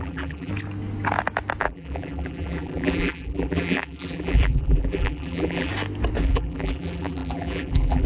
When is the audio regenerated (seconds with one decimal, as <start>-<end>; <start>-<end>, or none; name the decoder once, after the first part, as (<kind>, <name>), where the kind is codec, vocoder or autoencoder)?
0.0-0.5 (vocoder, BigVGAN v2); 1.6-5.7; 6.2-8.1